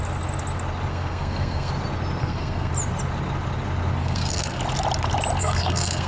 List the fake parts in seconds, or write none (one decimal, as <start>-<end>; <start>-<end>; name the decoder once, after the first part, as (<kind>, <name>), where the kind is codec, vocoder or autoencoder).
0.9-1.7 (codec, SNAC); 2.2-2.7; 4.0-4.6; 5.4-6.1